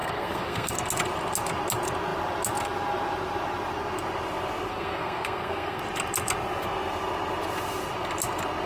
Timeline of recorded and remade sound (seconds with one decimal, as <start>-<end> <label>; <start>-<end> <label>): 0.0-0.7 remade; 0.7-4.7 recorded; 4.7-5.8 remade; 5.8-8.7 recorded